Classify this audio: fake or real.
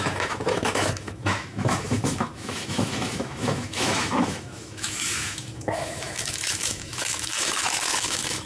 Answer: fake